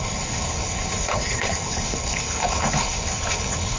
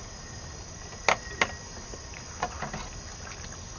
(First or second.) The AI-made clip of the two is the first